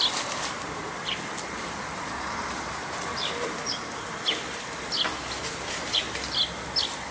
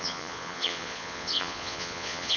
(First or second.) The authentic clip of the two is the first